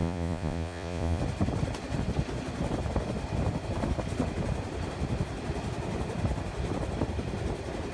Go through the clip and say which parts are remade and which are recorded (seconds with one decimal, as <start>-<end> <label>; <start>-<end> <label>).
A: 0.0-1.2 remade; 1.2-7.9 recorded